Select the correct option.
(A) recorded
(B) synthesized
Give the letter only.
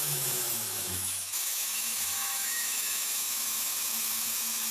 B